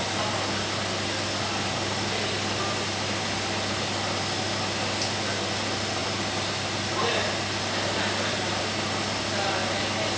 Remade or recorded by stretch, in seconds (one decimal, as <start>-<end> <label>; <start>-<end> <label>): 0.0-10.2 recorded